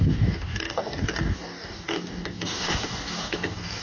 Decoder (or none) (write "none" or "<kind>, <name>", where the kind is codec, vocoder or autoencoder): codec, DAC